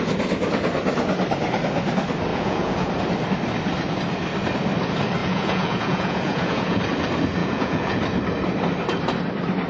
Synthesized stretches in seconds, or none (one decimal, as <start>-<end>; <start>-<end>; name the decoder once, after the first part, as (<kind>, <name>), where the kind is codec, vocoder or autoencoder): 2.3-2.9 (vocoder, Vocos); 5.2-6.8; 7.4-8.0